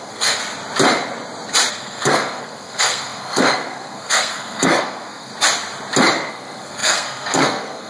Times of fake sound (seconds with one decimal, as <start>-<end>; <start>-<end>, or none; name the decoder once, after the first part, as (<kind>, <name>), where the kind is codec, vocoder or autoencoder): 0.0-0.4 (codec, SNAC); 1.7-5.3; 6.3-7.9